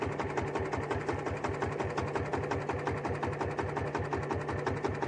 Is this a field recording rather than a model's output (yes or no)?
yes